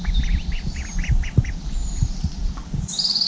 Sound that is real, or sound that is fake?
real